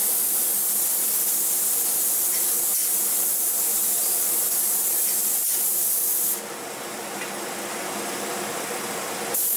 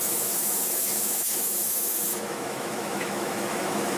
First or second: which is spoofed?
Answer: second